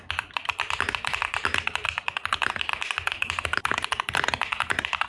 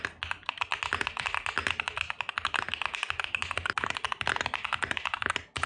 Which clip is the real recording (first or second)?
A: second